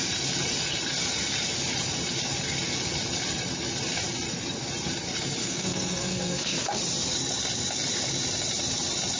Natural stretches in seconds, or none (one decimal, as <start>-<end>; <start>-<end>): 0.0-5.4; 6.8-9.2